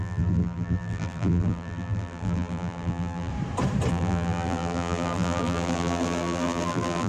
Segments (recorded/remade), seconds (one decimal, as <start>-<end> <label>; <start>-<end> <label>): 0.0-3.3 remade; 3.3-3.9 recorded; 3.9-7.1 remade